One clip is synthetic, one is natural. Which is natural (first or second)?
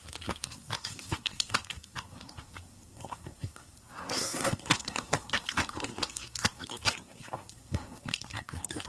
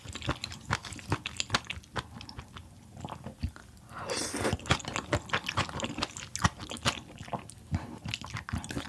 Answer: second